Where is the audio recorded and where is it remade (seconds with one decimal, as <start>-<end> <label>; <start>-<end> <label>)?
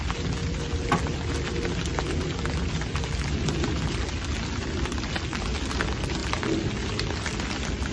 0.0-7.9 recorded